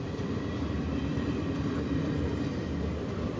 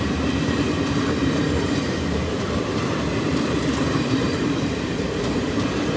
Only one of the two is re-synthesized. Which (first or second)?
second